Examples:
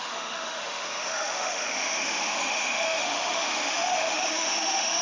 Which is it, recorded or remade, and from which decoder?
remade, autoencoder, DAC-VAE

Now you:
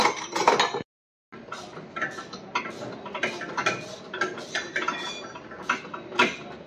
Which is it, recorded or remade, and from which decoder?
recorded